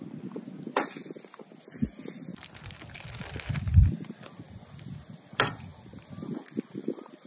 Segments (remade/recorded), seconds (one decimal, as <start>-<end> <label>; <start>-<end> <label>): 0.0-7.3 recorded